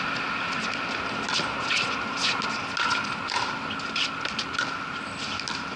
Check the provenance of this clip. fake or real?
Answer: real